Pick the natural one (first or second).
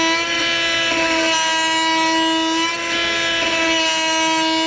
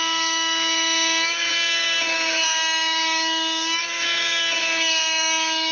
first